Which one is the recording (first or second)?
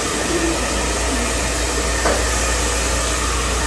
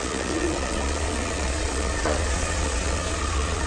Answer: first